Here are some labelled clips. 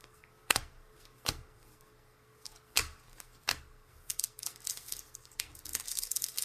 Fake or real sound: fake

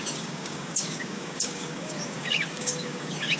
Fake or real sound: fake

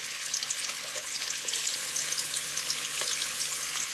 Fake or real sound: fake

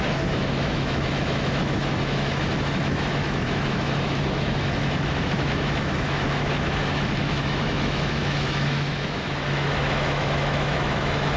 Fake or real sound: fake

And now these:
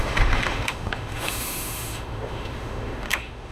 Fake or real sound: fake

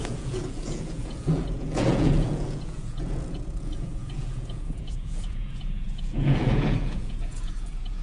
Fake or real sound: fake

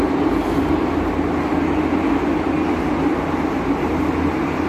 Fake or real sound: real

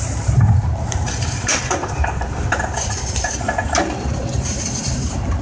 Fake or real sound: fake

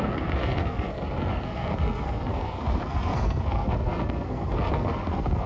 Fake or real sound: fake